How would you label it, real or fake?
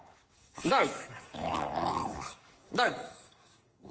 fake